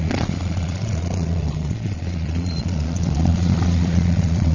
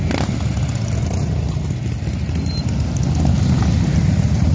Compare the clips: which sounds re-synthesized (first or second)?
first